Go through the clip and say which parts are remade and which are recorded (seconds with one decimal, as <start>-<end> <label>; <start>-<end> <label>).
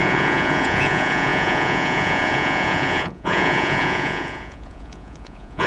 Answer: 0.0-5.7 remade